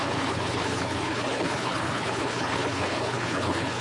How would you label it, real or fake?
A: fake